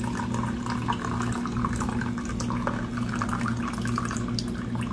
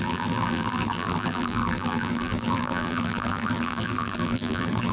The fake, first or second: second